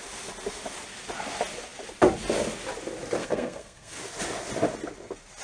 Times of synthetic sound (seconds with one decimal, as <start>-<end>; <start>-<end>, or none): 3.2-4.0